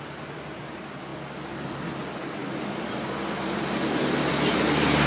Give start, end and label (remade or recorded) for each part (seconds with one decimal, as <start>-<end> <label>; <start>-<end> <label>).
0.0-5.1 recorded